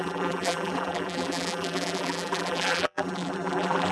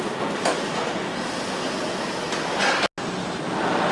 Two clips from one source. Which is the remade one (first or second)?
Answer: first